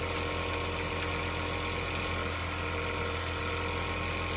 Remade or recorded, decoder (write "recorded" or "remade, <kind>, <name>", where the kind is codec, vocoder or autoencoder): recorded